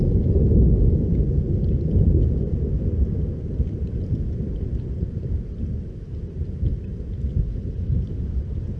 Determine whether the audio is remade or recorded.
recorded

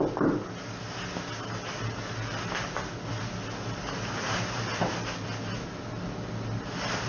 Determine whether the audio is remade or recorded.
recorded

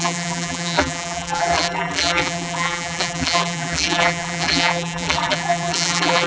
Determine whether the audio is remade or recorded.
remade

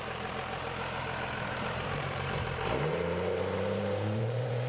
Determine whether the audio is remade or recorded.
remade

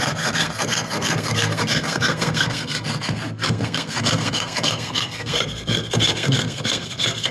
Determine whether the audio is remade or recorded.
remade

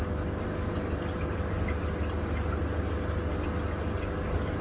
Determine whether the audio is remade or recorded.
recorded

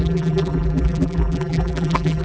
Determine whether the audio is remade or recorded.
remade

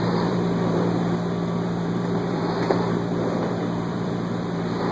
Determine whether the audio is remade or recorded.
remade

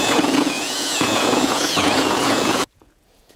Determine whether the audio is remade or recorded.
remade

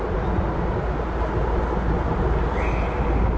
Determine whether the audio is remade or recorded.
recorded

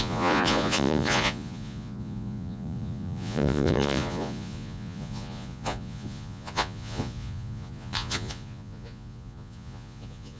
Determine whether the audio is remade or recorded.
remade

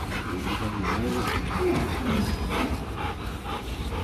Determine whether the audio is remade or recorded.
recorded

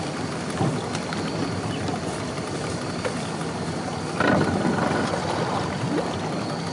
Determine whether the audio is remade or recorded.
recorded